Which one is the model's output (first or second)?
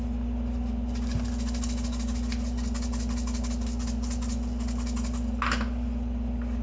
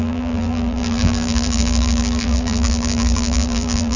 second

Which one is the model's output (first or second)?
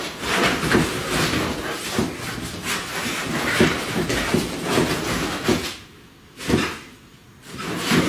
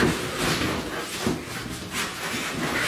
first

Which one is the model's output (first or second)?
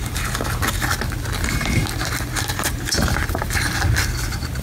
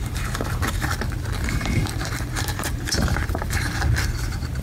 second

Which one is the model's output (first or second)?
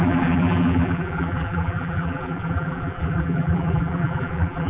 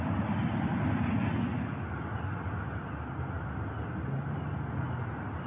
first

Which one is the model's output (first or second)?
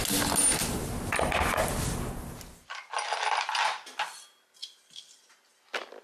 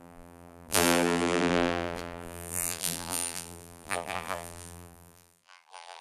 second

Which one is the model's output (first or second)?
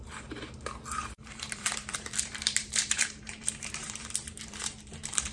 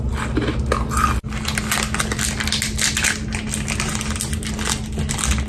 first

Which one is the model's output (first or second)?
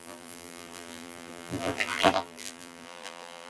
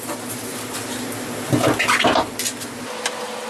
first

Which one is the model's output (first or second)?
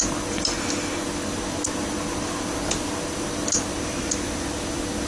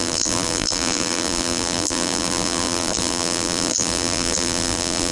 second